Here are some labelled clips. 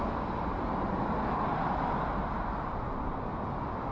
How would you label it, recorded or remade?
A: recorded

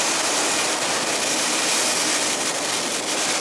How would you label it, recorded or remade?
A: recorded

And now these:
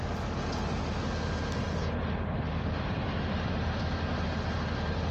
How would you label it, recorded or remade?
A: recorded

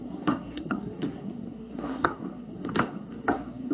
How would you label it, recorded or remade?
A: remade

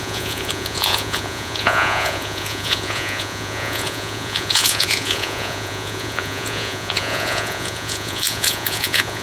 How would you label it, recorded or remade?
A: remade